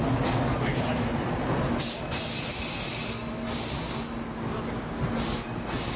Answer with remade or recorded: recorded